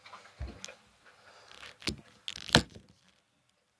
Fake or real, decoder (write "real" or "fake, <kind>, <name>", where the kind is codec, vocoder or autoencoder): real